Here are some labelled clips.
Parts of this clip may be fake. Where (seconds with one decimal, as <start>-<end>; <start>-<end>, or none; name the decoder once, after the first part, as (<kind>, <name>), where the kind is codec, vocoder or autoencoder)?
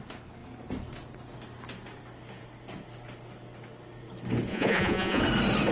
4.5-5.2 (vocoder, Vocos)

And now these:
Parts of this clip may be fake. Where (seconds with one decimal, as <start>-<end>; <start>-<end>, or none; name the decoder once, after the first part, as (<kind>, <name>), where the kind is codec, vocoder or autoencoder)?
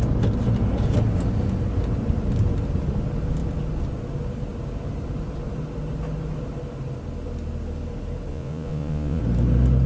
8.3-9.2 (vocoder, Vocos)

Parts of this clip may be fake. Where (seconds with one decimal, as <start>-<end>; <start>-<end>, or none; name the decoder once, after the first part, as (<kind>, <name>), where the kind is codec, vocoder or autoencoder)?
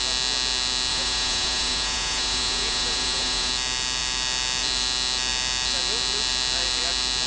0.9-3.5 (vocoder, Vocos)